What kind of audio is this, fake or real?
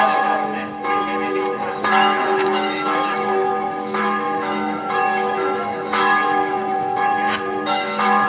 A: fake